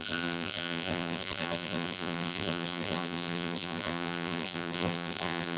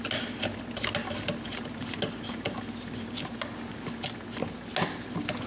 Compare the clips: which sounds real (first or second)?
second